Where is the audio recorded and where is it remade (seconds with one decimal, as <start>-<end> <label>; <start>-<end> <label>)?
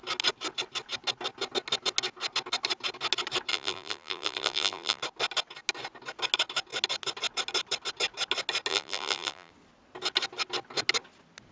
0.0-3.5 recorded; 3.5-5.0 remade; 5.0-8.7 recorded; 8.7-9.5 remade; 9.5-11.5 recorded